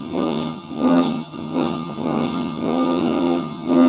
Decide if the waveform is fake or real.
fake